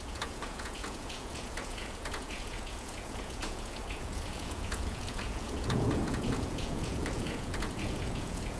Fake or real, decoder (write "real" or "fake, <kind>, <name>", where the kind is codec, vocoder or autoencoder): fake, vocoder, Vocos